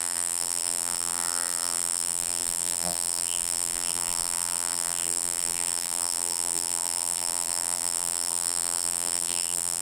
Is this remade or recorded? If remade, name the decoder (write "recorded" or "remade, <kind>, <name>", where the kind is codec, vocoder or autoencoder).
remade, vocoder, BigVGAN v2